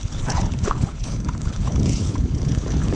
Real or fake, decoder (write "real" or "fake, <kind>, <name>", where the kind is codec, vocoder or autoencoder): fake, codec, HILCodec